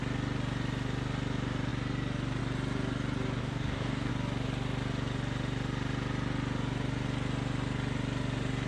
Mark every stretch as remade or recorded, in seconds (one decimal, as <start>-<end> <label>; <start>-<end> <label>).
0.0-3.4 recorded; 3.4-4.1 remade; 4.1-8.7 recorded